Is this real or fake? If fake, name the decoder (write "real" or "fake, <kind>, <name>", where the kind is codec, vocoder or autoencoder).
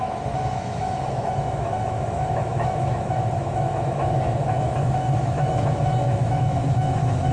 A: fake, autoencoder, DAC-VAE